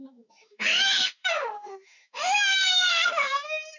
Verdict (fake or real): fake